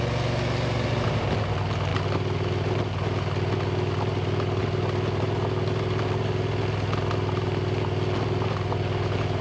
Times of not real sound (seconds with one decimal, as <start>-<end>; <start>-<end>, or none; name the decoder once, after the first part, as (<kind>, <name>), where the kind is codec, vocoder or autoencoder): none